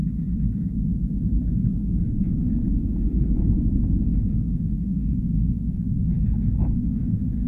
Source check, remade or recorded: remade